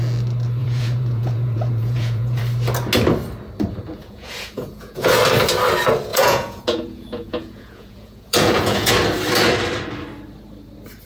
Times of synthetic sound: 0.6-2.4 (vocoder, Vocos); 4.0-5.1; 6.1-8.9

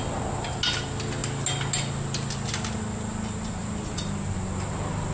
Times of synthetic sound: none

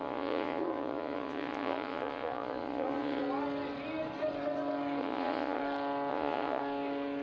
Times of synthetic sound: 0.0-3.2 (vocoder, Vocos); 5.0-5.6; 6.1-6.6